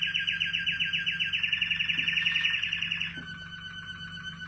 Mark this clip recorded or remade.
recorded